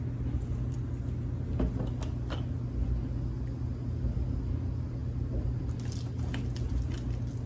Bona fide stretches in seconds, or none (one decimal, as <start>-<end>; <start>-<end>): 0.0-7.5

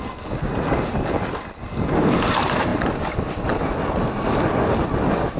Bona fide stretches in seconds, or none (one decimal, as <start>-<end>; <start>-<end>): 0.0-5.4

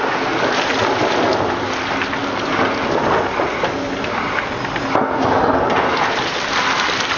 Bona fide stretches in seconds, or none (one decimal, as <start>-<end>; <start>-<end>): 0.0-7.2

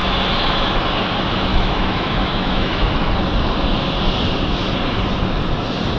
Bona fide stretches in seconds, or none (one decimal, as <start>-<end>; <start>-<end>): 0.8-1.5; 3.1-6.0